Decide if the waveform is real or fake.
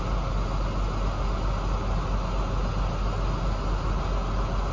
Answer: real